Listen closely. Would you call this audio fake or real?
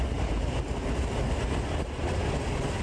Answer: real